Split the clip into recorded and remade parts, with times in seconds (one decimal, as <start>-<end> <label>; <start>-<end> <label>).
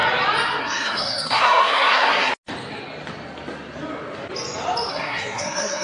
0.0-0.6 recorded; 0.6-2.3 remade; 2.3-4.9 recorded; 4.9-5.8 remade